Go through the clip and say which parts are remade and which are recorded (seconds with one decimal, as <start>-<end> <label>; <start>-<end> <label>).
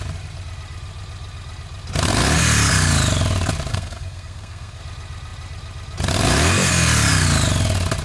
0.0-3.7 recorded; 3.7-4.8 remade; 4.8-8.0 recorded